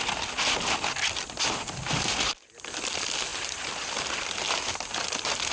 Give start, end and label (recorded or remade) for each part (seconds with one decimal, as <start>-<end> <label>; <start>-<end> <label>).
0.0-5.5 recorded

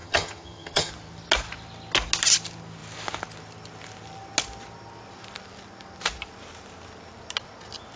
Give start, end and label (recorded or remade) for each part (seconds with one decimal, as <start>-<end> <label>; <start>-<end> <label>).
0.0-0.9 remade; 0.9-8.0 recorded

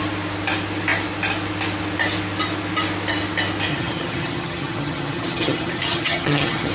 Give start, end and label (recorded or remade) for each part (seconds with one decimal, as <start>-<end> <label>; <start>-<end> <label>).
0.0-3.7 recorded; 3.7-6.7 remade